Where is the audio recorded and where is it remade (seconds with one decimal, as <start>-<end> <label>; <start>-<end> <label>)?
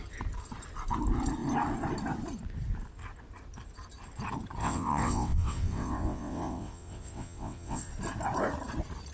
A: 0.0-4.6 recorded; 4.6-7.9 remade; 7.9-9.1 recorded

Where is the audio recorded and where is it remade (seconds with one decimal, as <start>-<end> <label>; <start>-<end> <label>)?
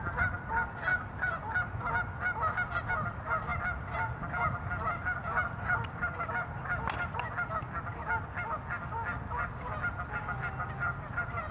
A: 0.0-11.5 recorded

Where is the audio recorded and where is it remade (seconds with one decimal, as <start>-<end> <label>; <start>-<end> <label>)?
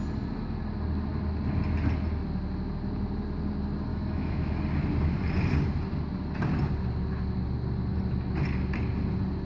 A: 0.0-3.9 recorded; 3.9-4.5 remade; 4.5-9.4 recorded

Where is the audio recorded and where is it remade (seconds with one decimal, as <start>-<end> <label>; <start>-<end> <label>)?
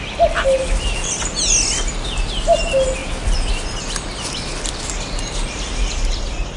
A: 0.0-6.6 recorded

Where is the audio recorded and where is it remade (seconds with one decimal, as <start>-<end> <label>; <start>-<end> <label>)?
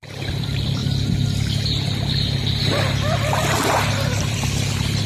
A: 0.0-0.8 remade; 0.8-2.1 recorded; 2.1-5.1 remade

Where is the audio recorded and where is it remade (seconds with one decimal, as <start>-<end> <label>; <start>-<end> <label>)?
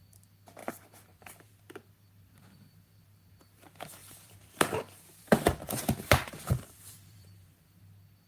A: 0.0-0.6 recorded; 0.6-1.5 remade; 1.5-4.0 recorded; 4.0-7.8 remade; 7.8-8.3 recorded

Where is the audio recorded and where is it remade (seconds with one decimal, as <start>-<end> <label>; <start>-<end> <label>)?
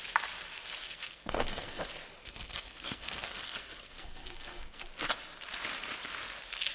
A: 0.0-0.8 recorded; 0.8-1.8 remade; 1.8-2.2 recorded; 2.2-4.8 remade; 4.8-6.7 recorded